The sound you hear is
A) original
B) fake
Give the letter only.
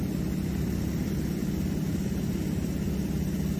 B